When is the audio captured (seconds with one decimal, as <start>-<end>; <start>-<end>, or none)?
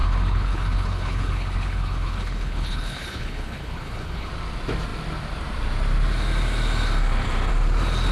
4.3-8.1